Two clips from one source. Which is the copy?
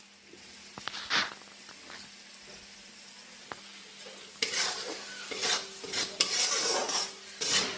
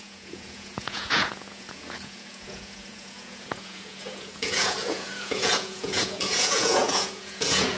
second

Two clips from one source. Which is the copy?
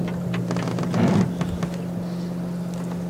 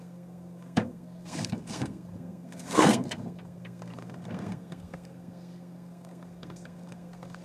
second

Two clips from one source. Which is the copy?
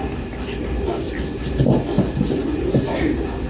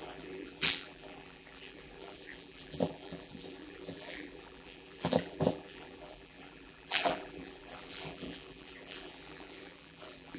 second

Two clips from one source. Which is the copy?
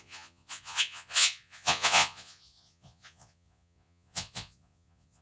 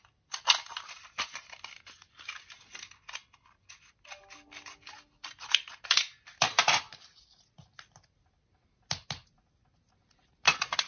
first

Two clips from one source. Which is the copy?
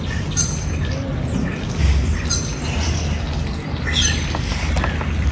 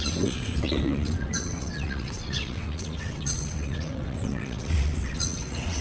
second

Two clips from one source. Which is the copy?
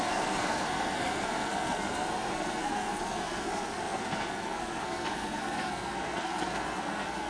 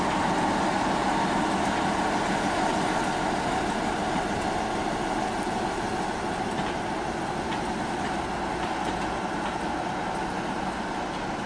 first